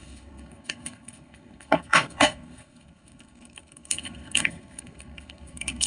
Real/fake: fake